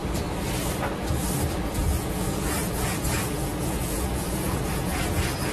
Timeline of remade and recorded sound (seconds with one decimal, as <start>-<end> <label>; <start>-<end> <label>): 0.0-1.7 recorded; 1.7-5.5 remade